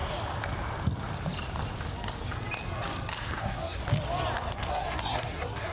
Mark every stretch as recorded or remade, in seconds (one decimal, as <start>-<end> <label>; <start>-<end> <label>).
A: 0.0-3.4 recorded; 3.4-3.8 remade; 3.8-4.7 recorded; 4.7-5.7 remade

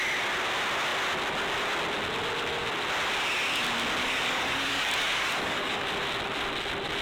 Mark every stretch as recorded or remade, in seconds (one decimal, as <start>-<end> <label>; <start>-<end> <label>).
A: 0.0-4.0 recorded; 4.0-5.9 remade; 5.9-7.0 recorded

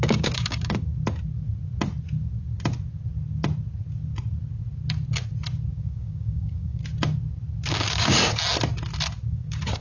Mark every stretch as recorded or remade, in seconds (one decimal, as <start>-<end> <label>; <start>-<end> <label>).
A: 0.0-0.9 remade; 0.9-5.7 recorded; 5.7-6.8 remade; 6.8-7.7 recorded; 7.7-8.4 remade; 8.4-9.3 recorded; 9.3-9.8 remade

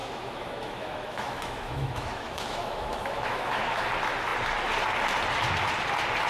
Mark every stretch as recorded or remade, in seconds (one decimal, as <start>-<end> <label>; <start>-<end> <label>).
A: 0.0-3.8 remade; 3.8-6.3 recorded

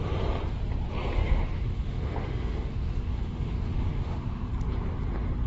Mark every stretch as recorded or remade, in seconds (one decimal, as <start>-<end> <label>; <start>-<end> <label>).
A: 0.0-1.2 recorded; 1.2-4.5 remade; 4.5-5.5 recorded

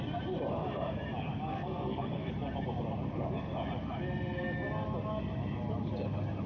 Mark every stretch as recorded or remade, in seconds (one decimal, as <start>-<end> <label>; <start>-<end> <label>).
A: 0.0-1.5 recorded; 1.5-2.3 remade; 2.3-6.5 recorded